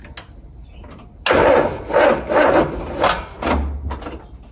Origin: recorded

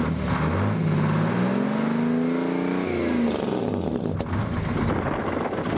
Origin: recorded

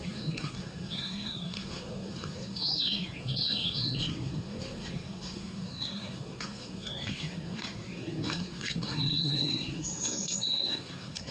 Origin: remade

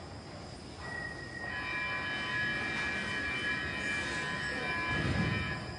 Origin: recorded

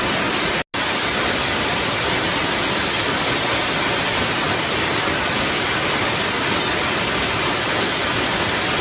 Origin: recorded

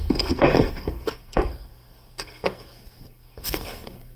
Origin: remade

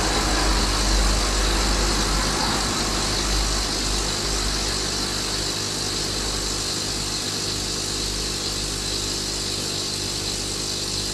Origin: recorded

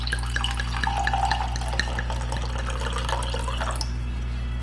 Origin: recorded